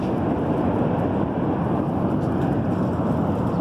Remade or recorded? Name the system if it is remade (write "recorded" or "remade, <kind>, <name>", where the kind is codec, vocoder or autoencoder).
recorded